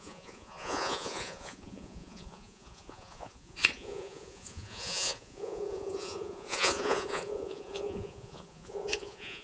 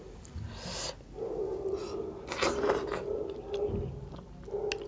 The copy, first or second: first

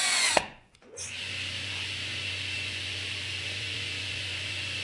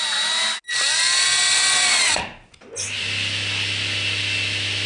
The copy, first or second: first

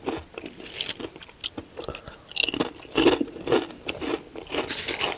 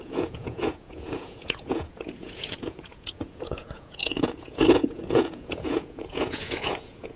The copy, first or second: second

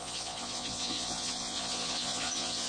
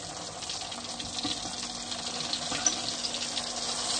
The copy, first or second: first